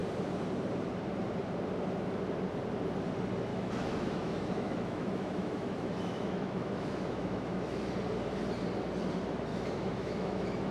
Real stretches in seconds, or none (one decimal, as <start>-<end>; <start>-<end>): 0.0-3.5; 7.9-9.5

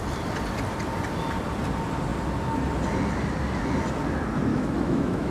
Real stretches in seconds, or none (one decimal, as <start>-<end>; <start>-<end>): 0.0-4.5

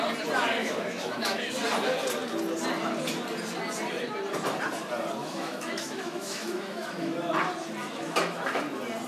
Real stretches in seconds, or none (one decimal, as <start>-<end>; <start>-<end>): 0.0-0.6; 1.5-5.2; 7.3-7.8; 8.6-9.1

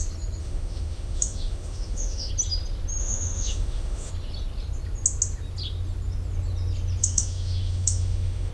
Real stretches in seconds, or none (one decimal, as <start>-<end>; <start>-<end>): 0.0-0.4; 2.3-3.0; 4.1-7.0

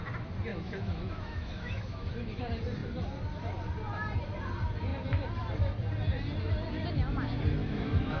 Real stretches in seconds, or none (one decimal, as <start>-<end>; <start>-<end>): 0.0-0.5; 2.4-7.6

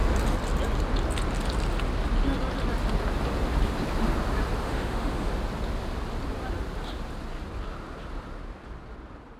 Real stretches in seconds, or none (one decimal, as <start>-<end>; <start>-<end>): 0.0-4.6; 5.3-9.4

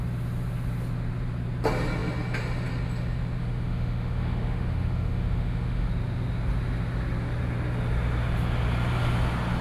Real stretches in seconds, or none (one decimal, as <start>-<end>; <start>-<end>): 0.0-3.4; 5.9-9.6